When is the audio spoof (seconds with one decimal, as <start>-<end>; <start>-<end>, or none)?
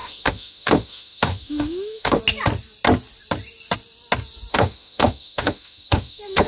0.0-2.2; 4.5-6.5